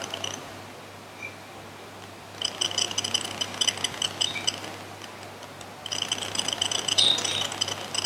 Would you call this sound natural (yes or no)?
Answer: yes